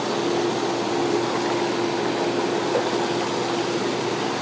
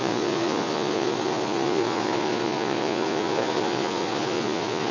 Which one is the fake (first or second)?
second